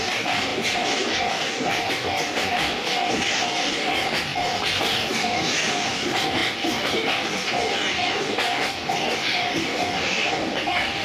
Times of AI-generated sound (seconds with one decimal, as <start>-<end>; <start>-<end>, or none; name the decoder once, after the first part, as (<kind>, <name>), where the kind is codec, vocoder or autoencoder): 0.0-11.0 (codec, DAC)